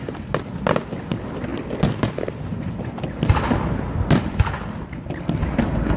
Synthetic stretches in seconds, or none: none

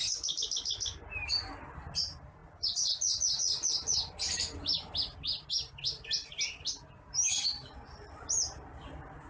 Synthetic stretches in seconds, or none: none

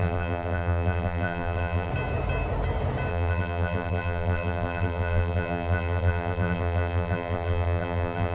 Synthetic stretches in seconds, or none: 0.0-1.9; 3.1-8.3